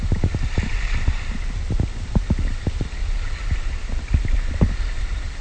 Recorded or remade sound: recorded